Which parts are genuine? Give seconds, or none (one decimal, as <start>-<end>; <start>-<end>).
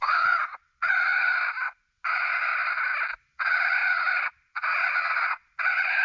1.3-2.1; 2.5-3.2